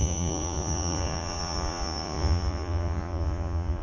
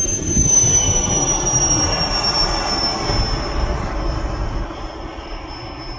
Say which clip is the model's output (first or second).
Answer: first